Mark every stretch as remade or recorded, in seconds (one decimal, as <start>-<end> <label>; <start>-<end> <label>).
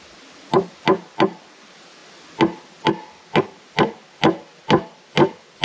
0.0-5.6 recorded